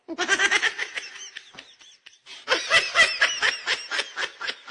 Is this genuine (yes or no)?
yes